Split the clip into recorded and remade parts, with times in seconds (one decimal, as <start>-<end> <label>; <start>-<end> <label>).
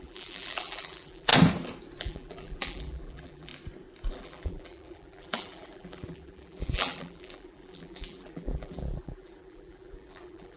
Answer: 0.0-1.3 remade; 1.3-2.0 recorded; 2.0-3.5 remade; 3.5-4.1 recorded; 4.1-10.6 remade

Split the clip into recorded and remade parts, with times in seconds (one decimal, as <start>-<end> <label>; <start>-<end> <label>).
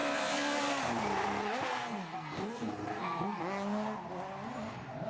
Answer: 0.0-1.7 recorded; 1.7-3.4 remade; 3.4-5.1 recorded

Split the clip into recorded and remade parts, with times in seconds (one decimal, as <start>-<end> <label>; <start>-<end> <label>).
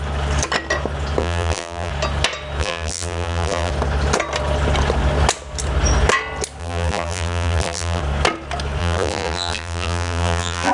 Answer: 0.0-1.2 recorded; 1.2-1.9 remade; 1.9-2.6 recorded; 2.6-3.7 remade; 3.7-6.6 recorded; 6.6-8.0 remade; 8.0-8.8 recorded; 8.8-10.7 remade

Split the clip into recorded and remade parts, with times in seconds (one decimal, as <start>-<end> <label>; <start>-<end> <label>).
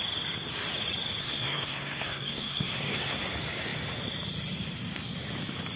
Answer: 0.0-1.2 recorded; 1.2-3.2 remade; 3.2-5.8 recorded